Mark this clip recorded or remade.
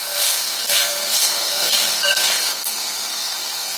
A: remade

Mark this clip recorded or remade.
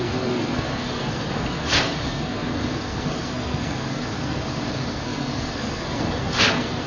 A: remade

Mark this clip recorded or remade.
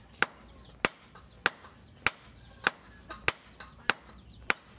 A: recorded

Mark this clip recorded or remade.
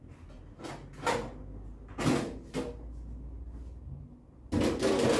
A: recorded